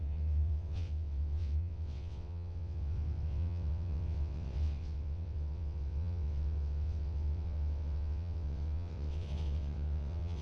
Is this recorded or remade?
remade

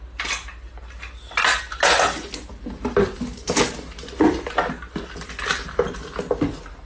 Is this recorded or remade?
recorded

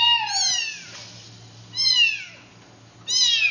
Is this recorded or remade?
recorded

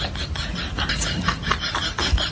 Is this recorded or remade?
recorded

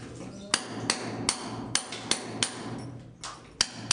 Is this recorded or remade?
recorded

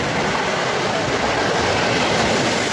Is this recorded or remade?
remade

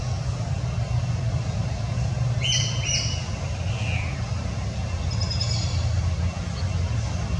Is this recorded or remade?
recorded